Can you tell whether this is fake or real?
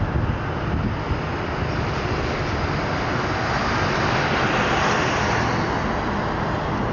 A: real